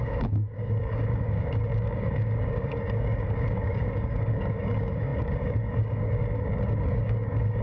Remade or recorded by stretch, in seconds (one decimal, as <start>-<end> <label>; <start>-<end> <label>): 0.0-7.6 remade